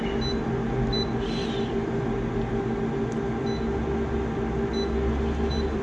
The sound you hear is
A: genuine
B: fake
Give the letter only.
A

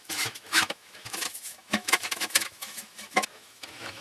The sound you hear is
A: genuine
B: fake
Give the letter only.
B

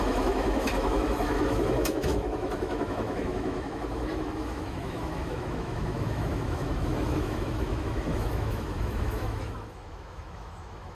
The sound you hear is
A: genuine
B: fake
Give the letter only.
B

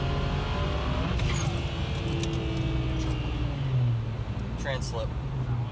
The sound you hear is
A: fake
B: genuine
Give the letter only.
B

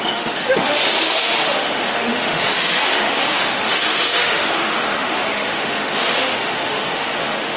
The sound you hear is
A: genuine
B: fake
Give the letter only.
B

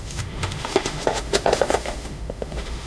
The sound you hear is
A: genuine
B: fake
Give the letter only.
B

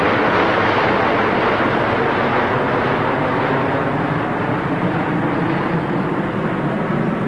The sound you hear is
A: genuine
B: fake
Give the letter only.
A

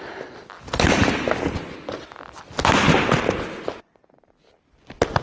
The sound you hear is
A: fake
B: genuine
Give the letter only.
B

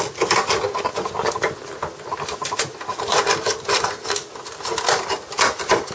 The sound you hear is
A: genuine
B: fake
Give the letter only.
A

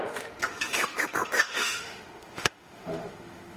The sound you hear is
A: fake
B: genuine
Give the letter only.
A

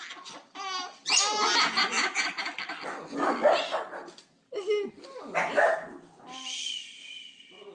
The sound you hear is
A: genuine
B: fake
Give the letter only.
A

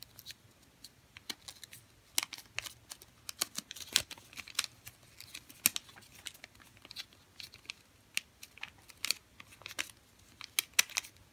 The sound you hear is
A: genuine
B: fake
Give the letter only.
A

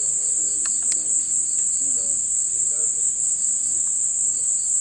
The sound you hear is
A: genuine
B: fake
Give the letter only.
A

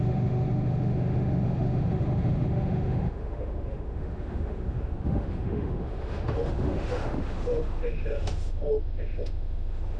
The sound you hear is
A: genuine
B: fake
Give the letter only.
B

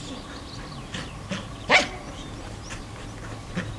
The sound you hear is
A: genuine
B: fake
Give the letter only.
A